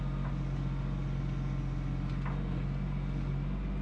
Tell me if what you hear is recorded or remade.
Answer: recorded